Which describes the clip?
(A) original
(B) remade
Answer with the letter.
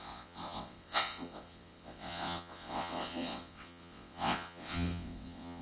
B